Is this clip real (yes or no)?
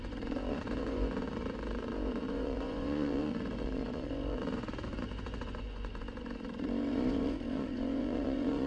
no